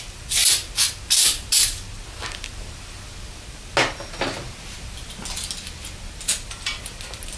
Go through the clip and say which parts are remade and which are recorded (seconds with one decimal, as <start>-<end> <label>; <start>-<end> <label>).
0.0-7.4 recorded